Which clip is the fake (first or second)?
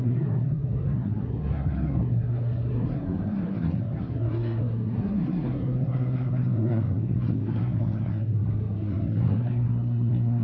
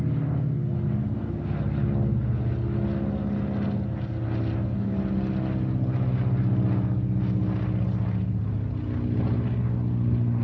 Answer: first